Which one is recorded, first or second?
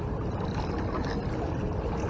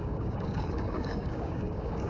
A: first